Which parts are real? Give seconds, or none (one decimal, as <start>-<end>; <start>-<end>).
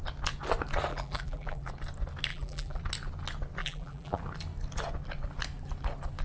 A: 0.0-0.9; 1.7-2.3; 2.8-3.6; 4.2-6.2